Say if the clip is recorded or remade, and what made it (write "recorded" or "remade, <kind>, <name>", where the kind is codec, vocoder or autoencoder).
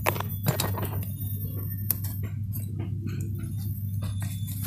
recorded